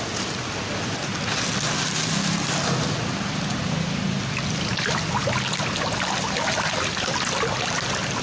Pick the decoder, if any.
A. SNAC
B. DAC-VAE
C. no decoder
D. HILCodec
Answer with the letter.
C